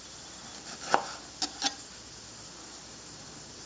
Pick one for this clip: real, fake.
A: real